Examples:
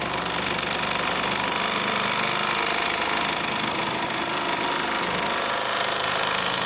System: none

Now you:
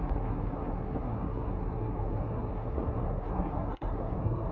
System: codec, SNAC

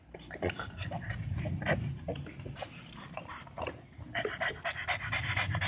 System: none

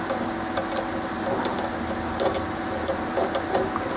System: none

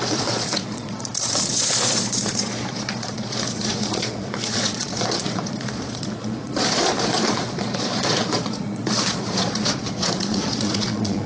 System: vocoder, Vocos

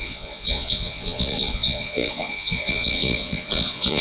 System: vocoder, Vocos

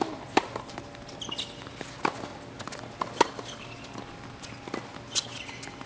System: none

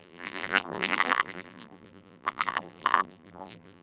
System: vocoder, BigVGAN v2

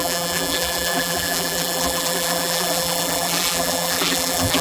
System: vocoder, BigVGAN v2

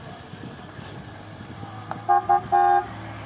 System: none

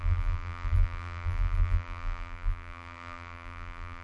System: vocoder, BigVGAN v2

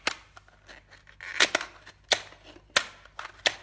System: none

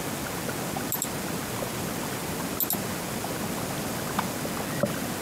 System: none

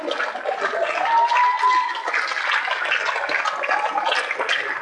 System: none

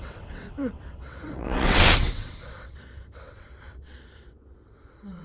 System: vocoder, WaveNeXt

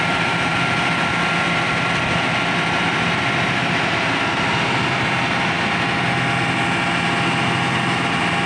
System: none